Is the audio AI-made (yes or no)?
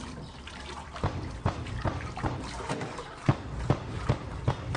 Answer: yes